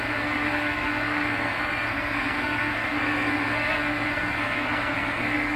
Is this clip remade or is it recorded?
remade